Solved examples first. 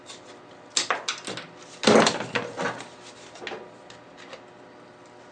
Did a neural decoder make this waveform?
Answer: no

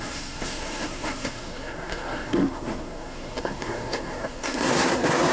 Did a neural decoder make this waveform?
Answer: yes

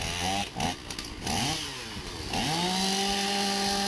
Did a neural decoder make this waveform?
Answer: no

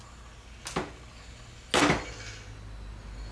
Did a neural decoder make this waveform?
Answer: no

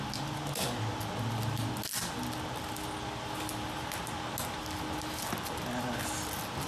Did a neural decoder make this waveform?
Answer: no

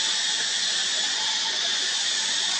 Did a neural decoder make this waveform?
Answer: yes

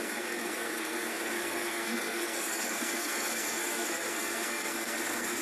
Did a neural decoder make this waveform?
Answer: yes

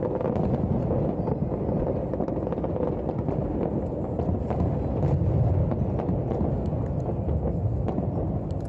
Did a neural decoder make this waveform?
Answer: no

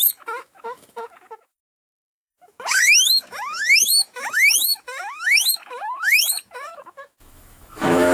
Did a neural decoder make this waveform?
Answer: yes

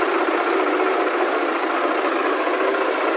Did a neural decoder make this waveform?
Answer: no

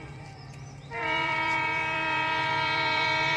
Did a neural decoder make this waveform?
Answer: yes